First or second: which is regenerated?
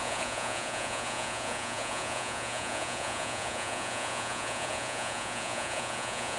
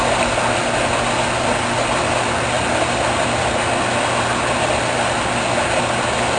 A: first